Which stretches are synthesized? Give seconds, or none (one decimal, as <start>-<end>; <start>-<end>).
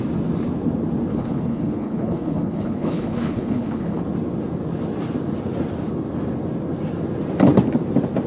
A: 1.1-4.0